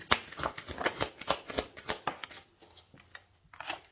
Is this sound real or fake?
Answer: real